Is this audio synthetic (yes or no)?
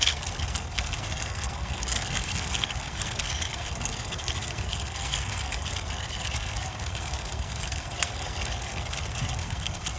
yes